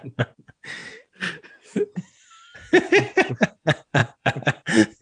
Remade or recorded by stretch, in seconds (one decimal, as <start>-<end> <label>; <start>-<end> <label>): 0.0-0.8 remade; 0.8-3.3 recorded; 3.3-5.0 remade